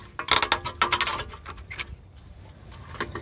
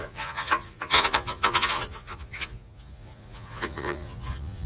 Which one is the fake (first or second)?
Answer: second